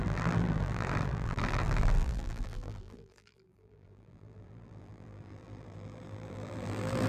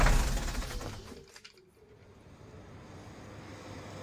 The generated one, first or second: first